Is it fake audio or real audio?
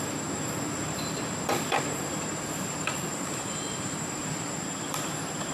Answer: fake